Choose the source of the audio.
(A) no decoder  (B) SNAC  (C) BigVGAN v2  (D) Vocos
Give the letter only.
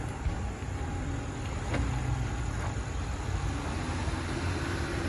A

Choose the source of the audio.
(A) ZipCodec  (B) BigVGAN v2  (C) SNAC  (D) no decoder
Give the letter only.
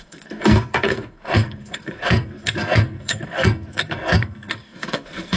C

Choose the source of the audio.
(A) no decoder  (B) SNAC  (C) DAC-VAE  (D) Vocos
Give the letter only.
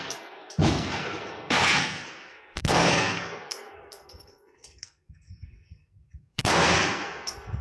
B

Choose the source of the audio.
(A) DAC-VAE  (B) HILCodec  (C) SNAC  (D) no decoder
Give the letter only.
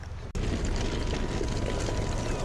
D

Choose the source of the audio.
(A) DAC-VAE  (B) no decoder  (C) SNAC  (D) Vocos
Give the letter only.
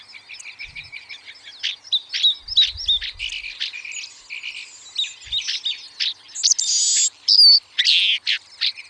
B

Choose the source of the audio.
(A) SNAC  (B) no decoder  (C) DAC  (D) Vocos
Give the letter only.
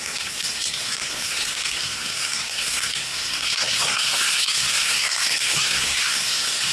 A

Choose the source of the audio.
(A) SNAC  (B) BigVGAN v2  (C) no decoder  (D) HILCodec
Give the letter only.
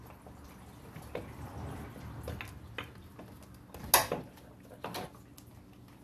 C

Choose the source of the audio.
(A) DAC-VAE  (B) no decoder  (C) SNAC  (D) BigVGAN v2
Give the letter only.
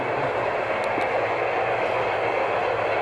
B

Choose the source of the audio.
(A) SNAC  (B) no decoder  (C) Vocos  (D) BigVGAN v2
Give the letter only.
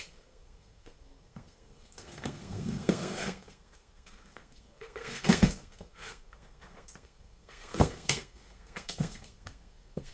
A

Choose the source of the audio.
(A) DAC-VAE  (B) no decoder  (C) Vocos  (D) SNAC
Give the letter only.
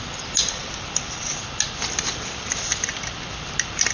B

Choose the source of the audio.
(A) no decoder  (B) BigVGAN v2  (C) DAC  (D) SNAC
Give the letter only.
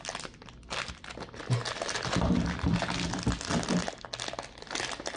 A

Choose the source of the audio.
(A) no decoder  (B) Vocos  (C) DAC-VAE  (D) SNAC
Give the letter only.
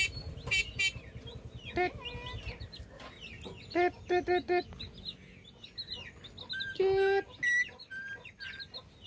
A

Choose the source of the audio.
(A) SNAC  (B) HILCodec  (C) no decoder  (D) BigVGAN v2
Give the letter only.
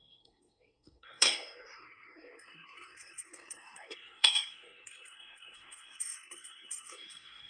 A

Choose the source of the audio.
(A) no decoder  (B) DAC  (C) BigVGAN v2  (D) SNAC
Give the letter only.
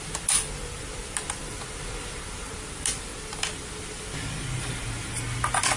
A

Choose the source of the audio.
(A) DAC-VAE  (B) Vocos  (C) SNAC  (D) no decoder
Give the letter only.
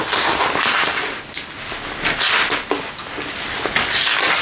D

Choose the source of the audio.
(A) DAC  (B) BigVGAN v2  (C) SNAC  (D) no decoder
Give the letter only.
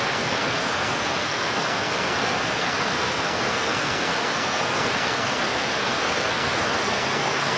C